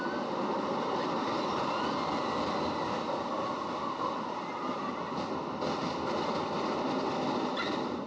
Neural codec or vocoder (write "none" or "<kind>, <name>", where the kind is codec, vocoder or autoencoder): none